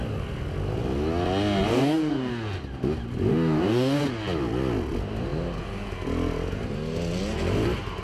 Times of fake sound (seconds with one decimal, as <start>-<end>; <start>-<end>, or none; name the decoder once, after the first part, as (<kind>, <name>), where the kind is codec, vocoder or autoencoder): 1.7-2.3 (codec, DAC); 3.3-4.0